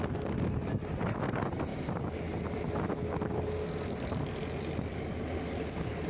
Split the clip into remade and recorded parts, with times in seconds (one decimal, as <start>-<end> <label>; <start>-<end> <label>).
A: 0.0-6.1 recorded